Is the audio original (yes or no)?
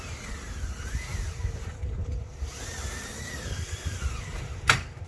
no